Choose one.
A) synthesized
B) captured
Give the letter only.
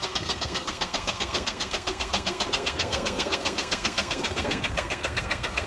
A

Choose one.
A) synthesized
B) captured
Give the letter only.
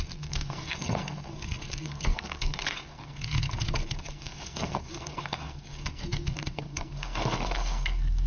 A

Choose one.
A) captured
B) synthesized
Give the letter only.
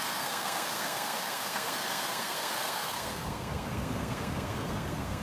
B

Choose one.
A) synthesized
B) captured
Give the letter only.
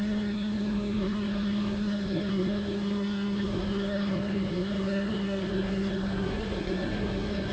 A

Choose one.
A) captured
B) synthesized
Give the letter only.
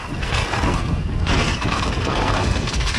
B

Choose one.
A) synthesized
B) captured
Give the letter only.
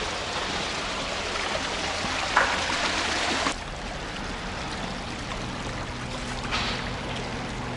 B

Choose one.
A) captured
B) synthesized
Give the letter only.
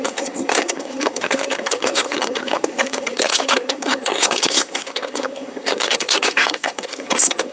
B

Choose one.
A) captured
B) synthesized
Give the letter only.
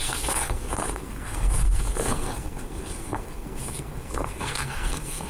B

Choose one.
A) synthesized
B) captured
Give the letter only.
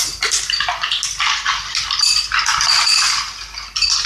B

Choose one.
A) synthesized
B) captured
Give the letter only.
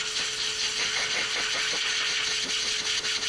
B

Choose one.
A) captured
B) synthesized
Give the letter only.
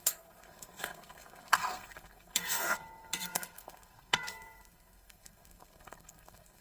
B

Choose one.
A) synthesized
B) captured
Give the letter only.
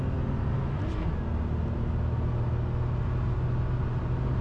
B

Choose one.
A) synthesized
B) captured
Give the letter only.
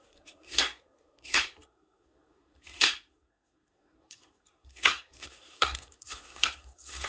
A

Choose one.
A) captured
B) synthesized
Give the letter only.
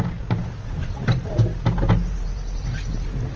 A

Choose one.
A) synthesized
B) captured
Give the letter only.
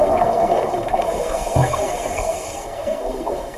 A